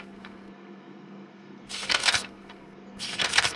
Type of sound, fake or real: fake